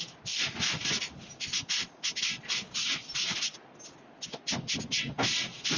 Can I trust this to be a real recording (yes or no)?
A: yes